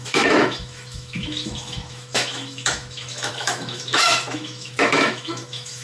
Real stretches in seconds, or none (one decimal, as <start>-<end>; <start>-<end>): none